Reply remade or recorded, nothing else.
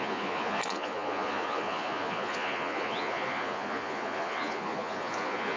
remade